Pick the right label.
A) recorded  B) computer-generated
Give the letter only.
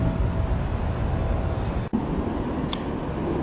A